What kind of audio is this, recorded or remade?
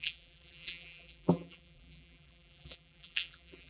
remade